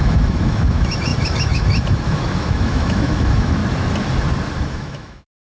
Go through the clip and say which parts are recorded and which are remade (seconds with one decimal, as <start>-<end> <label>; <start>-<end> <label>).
0.0-3.6 remade; 3.6-4.7 recorded; 4.7-5.5 remade